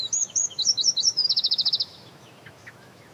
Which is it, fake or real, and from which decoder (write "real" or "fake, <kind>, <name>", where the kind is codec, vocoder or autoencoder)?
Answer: fake, autoencoder, DAC-VAE